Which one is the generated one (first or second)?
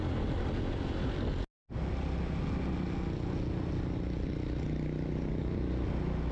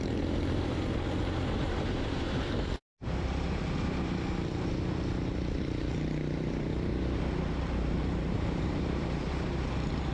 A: second